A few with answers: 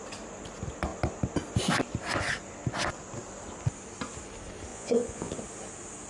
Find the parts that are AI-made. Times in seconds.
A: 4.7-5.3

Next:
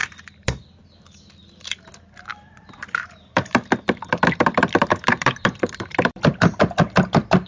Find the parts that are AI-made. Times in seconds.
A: 0.0-1.2; 2.3-6.8

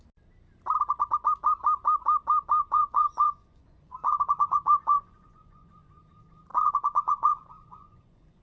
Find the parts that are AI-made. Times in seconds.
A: 2.6-6.0; 6.5-8.4

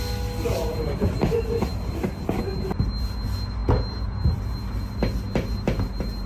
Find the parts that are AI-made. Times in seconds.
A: 1.7-2.4